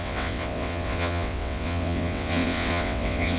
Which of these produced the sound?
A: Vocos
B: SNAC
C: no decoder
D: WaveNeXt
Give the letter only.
D